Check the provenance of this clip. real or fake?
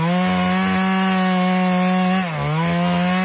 real